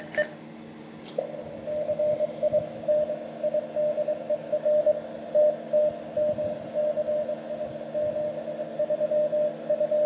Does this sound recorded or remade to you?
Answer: recorded